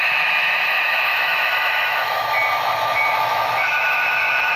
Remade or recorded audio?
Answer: remade